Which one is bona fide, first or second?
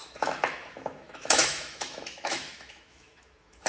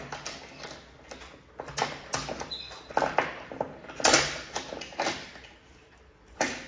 second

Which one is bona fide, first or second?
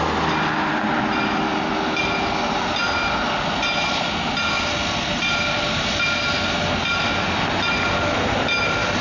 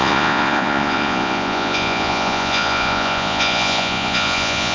first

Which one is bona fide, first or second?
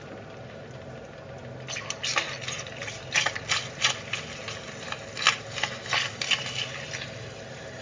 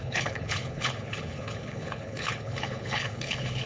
first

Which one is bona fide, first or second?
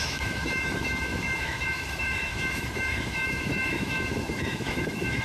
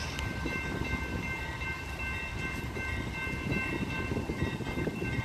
second